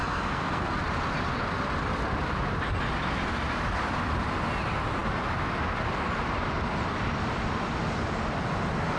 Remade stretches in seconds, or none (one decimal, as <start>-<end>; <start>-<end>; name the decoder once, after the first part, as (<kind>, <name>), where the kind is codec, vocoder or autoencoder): 0.0-0.8 (codec, SNAC)